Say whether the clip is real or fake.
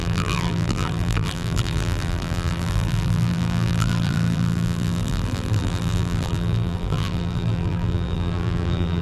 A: fake